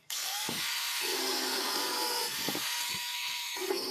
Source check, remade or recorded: remade